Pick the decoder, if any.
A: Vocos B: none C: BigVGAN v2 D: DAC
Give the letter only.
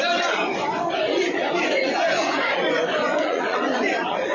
A